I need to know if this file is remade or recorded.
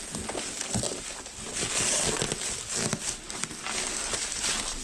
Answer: recorded